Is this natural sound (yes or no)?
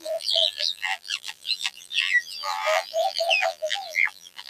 no